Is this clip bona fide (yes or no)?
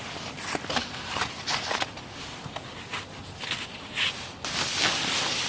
yes